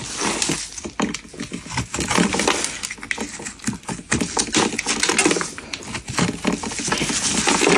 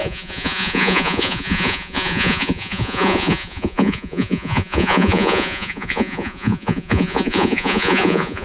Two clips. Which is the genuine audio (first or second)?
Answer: first